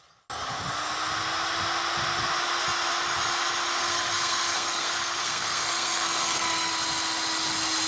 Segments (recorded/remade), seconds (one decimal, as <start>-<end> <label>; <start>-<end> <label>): 0.0-3.8 recorded; 3.8-6.7 remade; 6.7-7.9 recorded